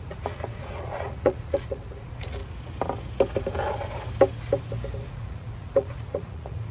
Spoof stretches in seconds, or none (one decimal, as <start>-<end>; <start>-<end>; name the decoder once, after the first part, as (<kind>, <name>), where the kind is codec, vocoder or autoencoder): 0.0-2.4 (vocoder, Vocos); 5.1-6.7